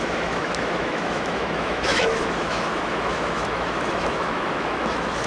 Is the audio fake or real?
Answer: fake